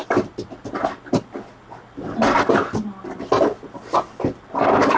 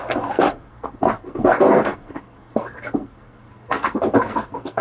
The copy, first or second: second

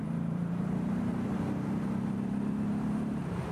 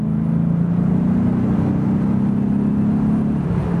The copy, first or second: first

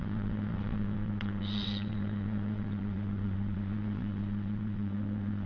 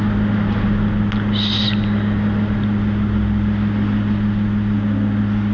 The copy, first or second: first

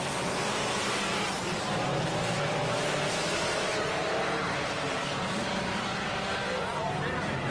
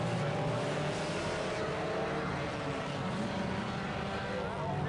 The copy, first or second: first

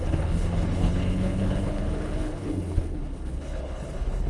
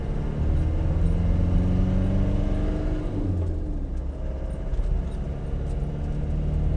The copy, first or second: first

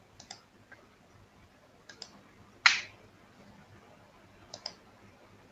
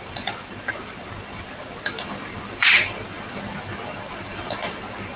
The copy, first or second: second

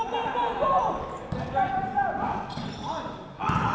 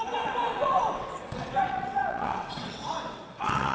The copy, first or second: second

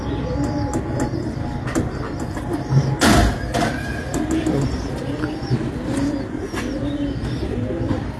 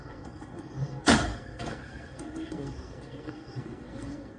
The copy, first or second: second